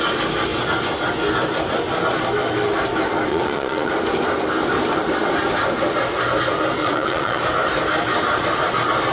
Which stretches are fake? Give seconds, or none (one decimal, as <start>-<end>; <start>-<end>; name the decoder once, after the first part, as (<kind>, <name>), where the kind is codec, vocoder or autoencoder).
3.3-3.9 (vocoder, Vocos); 6.8-7.4